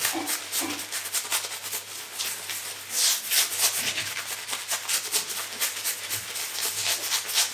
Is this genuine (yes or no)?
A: yes